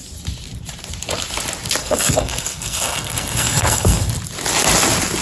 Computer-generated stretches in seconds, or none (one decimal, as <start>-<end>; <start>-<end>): 1.8-4.1